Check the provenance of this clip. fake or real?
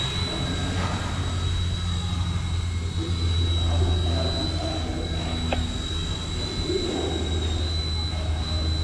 real